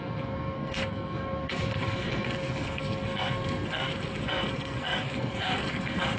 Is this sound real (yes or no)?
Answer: no